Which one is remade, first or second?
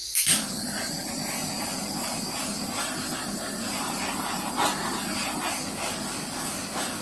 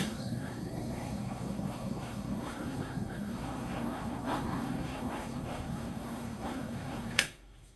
second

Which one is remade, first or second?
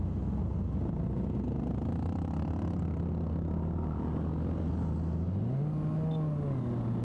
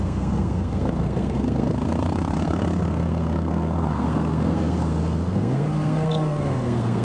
second